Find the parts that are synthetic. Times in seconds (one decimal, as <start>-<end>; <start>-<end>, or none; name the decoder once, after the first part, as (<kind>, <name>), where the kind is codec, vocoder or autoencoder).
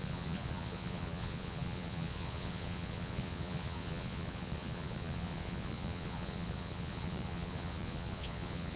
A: 0.0-8.8 (vocoder, Vocos)